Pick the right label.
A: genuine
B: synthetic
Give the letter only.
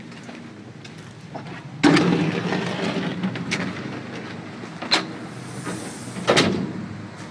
A